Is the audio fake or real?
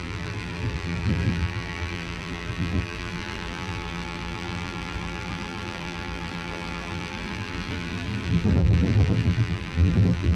fake